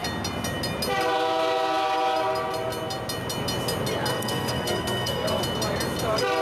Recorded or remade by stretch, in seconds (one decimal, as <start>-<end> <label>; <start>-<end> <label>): 0.0-4.1 recorded; 4.1-5.4 remade; 5.4-6.4 recorded